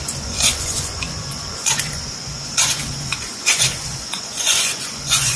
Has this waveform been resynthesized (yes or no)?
yes